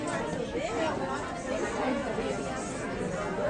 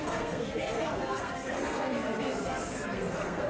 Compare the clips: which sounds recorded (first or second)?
first